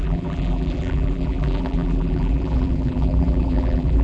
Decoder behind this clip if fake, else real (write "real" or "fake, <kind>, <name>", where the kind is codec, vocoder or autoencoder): fake, vocoder, BigVGAN v2